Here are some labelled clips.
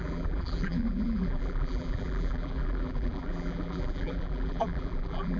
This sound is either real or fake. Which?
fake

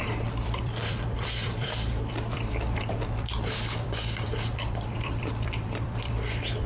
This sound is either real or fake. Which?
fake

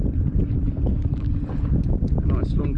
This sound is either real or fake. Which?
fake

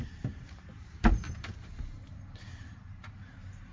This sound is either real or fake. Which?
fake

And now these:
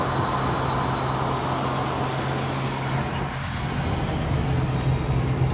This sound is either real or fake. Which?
real